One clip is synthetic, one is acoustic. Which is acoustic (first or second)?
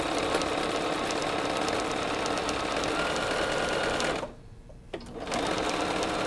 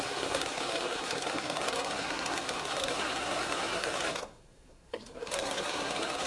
first